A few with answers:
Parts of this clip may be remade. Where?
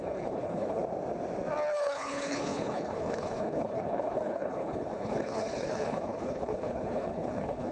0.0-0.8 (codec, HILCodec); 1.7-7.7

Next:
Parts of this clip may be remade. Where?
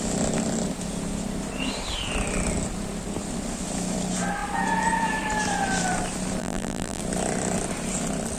6.4-7.0 (vocoder, BigVGAN v2)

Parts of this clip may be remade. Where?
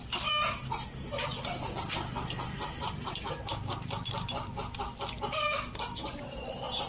none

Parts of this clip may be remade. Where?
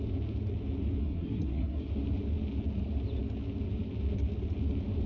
1.0-1.9 (codec, SNAC)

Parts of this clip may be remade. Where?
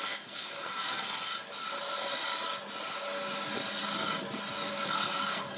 0.0-1.3 (codec, SNAC); 4.7-5.6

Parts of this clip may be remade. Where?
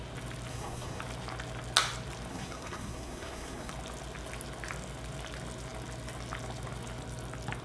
0.5-1.0 (codec, SNAC); 2.3-3.7